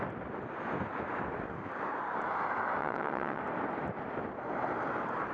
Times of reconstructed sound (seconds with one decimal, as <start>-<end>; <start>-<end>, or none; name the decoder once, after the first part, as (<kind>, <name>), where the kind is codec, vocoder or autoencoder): 2.8-3.4 (vocoder, WaveNeXt)

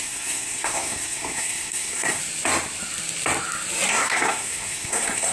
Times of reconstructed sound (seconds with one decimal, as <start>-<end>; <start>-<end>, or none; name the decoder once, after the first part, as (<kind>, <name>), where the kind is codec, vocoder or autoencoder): 0.0-2.2 (codec, SNAC); 3.9-5.3

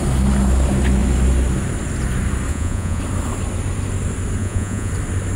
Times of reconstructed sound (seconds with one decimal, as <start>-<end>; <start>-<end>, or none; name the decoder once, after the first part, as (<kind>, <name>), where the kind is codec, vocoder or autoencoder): 2.5-3.0 (vocoder, Vocos); 4.4-4.9